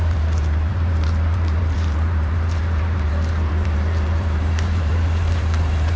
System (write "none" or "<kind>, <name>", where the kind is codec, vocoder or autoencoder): vocoder, BigVGAN v2